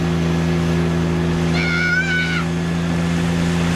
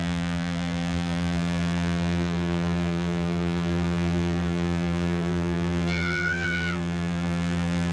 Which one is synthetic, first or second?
second